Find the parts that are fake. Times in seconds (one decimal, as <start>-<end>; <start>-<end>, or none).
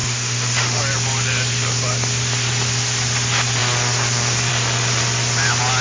0.0-0.8